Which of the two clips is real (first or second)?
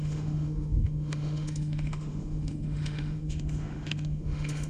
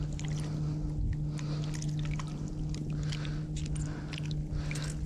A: second